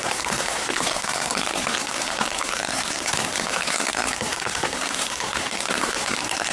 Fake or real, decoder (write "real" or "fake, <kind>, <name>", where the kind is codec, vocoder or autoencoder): fake, codec, SNAC